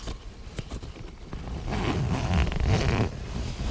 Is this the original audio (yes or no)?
yes